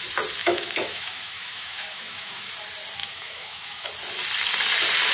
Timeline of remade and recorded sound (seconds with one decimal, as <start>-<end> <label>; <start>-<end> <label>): 0.0-0.4 recorded; 0.4-2.5 remade; 2.5-3.0 recorded; 3.0-3.9 remade; 3.9-5.1 recorded